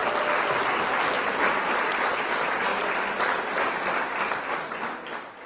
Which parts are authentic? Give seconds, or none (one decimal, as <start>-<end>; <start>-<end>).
0.0-5.5